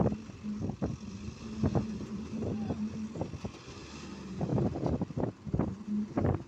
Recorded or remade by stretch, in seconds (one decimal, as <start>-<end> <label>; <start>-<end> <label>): 0.0-6.5 recorded